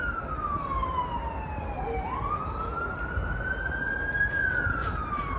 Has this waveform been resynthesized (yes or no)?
no